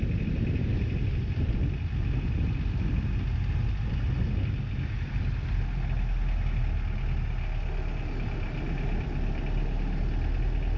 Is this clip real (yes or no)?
yes